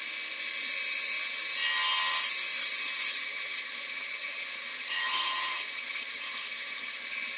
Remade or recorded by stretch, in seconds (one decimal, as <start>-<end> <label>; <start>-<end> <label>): 0.0-2.6 recorded; 2.6-7.0 remade; 7.0-7.4 recorded